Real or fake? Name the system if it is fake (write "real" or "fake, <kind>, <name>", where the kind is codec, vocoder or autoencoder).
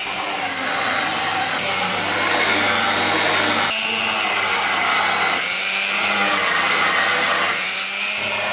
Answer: real